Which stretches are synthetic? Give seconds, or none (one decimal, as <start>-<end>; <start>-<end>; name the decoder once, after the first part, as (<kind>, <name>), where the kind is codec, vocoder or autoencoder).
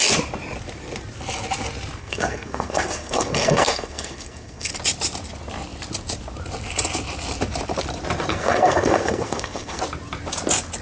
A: 2.0-4.7 (codec, SNAC); 8.3-9.8